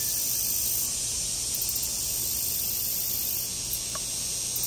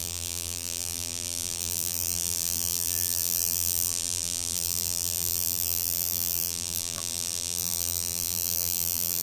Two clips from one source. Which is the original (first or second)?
first